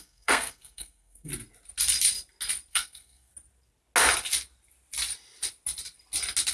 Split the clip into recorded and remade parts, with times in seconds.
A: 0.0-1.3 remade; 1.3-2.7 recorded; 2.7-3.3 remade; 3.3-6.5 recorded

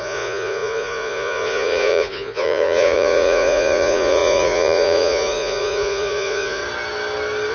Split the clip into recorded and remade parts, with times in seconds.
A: 0.0-6.6 remade; 6.6-7.5 recorded

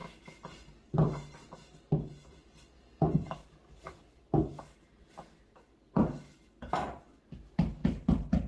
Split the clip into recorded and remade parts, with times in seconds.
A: 0.0-3.6 recorded; 3.6-4.6 remade; 4.6-8.5 recorded

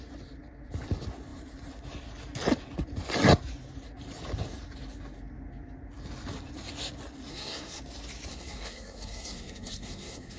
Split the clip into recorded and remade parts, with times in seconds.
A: 0.0-7.3 recorded; 7.3-7.8 remade; 7.8-8.3 recorded; 8.3-10.4 remade

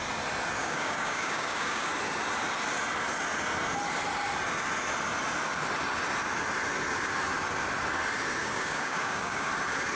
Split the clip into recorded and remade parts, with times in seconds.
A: 0.0-0.6 recorded; 0.6-1.9 remade; 1.9-8.4 recorded; 8.4-9.5 remade; 9.5-10.0 recorded